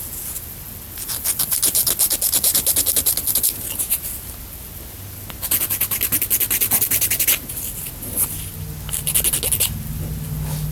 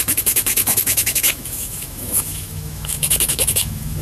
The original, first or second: first